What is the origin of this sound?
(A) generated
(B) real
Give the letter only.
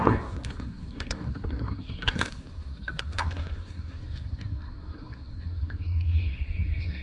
A